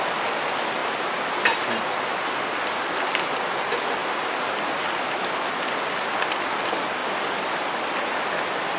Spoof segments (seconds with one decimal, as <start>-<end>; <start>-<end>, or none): none